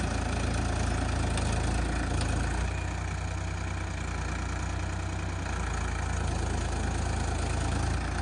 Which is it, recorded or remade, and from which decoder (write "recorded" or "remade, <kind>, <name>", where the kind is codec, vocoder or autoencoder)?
recorded